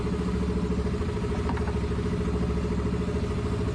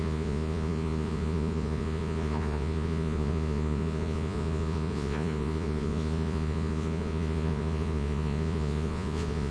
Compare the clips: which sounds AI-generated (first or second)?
second